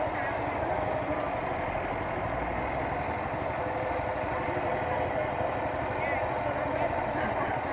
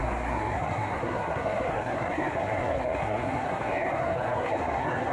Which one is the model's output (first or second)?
second